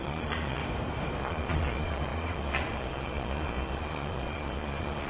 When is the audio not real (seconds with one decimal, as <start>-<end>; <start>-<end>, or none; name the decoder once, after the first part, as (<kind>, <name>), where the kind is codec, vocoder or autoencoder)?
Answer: 0.0-0.6 (vocoder, Vocos); 1.2-5.1